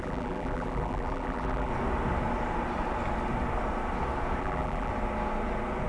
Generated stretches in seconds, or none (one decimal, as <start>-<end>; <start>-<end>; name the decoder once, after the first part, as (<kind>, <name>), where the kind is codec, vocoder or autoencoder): 0.0-1.7 (vocoder, BigVGAN v2); 4.4-4.9